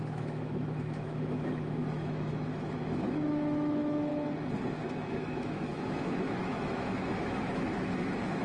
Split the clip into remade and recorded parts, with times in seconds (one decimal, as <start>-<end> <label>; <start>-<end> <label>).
0.0-4.1 remade; 4.1-5.1 recorded; 5.1-8.4 remade